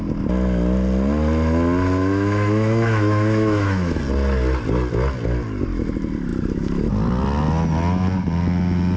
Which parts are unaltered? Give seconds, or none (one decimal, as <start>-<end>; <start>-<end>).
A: 0.0-2.0; 4.0-9.0